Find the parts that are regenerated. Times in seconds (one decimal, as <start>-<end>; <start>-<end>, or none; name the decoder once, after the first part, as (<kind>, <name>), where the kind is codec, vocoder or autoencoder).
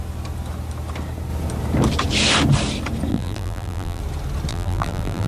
3.1-4.0 (vocoder, BigVGAN v2); 4.5-5.3